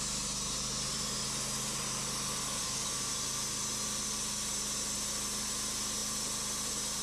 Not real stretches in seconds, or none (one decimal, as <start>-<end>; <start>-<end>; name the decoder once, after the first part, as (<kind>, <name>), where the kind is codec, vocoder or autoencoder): none